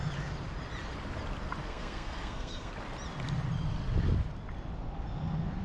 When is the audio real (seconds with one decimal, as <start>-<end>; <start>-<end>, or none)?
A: 0.0-1.7; 2.7-5.6